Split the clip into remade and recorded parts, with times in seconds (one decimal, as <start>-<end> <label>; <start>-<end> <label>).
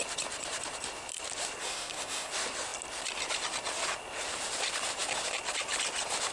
0.0-1.6 recorded; 1.6-2.3 remade; 2.3-6.3 recorded